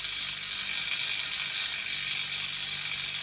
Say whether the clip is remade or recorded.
recorded